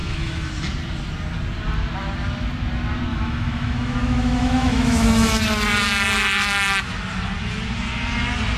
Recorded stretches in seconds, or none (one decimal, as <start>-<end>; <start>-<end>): 0.7-3.1; 5.4-8.6